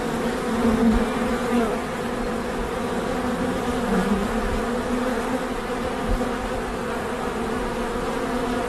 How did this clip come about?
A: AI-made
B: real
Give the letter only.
B